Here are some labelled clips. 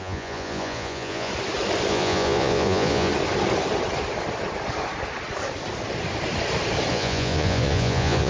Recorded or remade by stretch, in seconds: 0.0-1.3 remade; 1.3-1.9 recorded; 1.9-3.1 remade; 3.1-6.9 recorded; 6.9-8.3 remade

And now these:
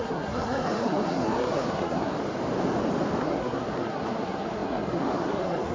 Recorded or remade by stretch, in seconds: 0.0-2.1 remade; 2.1-3.2 recorded; 3.2-5.7 remade